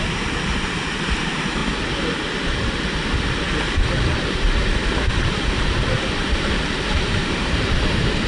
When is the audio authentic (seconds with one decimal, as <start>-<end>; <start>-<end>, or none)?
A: 1.6-4.2